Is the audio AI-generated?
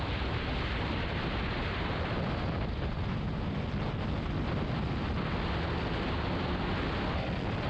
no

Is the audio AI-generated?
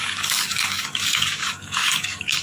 yes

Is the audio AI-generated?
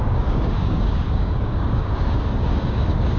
yes